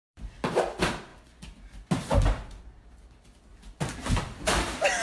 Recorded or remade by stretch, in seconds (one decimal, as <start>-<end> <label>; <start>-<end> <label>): 0.0-1.1 remade; 1.1-4.1 recorded; 4.1-5.0 remade